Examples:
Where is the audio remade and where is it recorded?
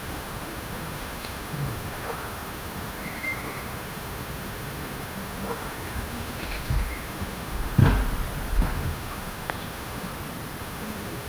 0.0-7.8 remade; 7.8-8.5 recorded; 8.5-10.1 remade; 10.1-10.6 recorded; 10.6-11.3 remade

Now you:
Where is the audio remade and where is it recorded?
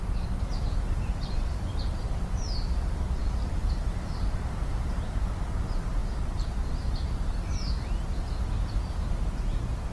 0.0-3.2 recorded; 3.2-5.4 remade; 5.4-9.9 recorded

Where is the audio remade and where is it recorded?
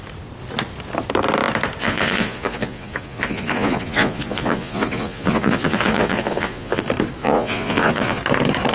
0.0-1.8 recorded; 1.8-6.8 remade; 6.8-7.2 recorded; 7.2-8.2 remade; 8.2-8.7 recorded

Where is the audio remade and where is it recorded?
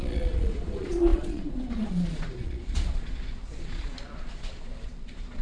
0.0-5.4 remade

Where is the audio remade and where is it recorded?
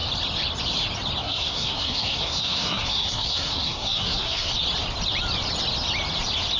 0.0-1.2 recorded; 1.2-4.5 remade; 4.5-6.6 recorded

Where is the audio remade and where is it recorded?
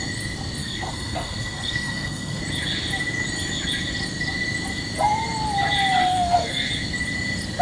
0.0-0.6 recorded; 0.6-2.4 remade; 2.4-6.0 recorded; 6.0-6.7 remade; 6.7-7.6 recorded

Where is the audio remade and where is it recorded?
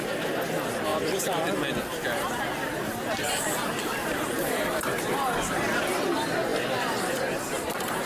0.0-0.9 recorded; 0.9-1.4 remade; 1.4-2.6 recorded; 2.6-5.8 remade; 5.8-6.5 recorded; 6.5-8.1 remade